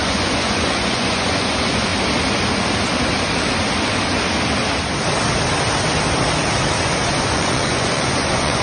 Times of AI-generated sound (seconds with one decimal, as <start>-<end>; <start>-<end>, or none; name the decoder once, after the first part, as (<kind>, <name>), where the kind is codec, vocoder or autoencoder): 0.0-1.9 (vocoder, Vocos); 6.8-8.6